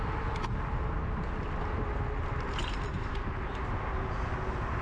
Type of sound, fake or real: real